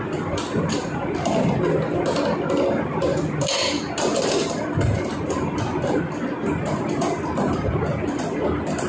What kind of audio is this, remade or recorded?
recorded